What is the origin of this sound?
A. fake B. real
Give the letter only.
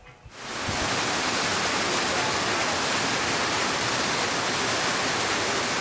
B